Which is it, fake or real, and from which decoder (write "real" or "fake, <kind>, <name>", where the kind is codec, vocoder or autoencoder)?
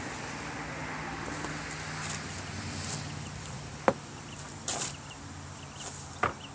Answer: real